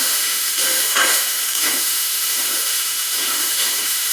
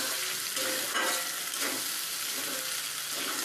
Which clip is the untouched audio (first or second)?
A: second